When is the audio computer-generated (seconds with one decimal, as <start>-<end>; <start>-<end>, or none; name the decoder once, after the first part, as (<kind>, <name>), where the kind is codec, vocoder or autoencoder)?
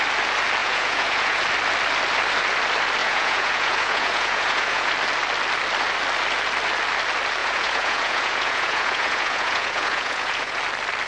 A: 0.6-1.4 (vocoder, Vocos); 3.0-4.9; 7.4-10.6